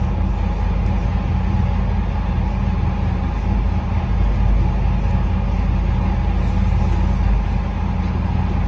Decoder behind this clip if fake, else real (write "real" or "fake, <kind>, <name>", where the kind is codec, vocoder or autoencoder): real